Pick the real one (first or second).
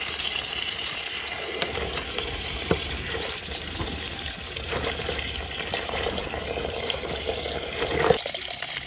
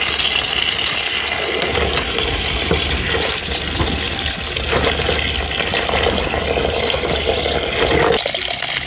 second